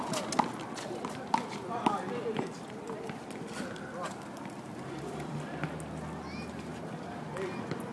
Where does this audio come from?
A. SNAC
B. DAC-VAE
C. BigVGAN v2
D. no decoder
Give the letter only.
D